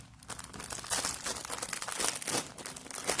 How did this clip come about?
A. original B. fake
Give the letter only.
A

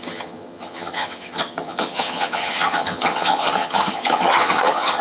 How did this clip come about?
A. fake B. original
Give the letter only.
A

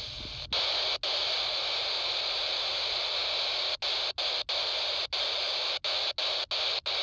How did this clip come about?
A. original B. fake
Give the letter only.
A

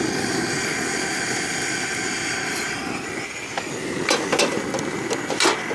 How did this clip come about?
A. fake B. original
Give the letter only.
B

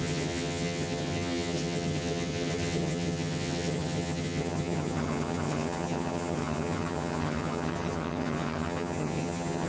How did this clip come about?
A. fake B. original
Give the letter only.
A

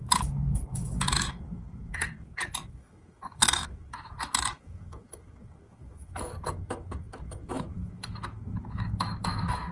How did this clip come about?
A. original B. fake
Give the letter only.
B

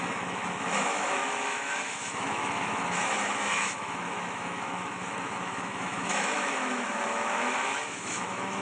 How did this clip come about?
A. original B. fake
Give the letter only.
B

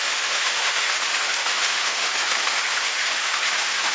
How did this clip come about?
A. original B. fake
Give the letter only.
B